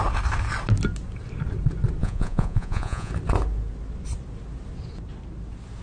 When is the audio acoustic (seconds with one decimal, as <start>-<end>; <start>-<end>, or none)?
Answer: 0.0-2.0; 3.1-5.8

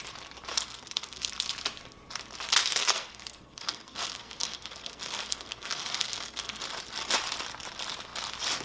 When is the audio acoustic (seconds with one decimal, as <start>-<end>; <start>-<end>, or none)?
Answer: 0.0-0.5; 1.3-2.6; 6.6-8.6